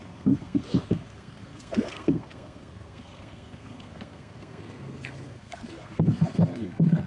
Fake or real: fake